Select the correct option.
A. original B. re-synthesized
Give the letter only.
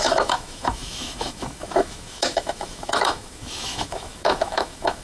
B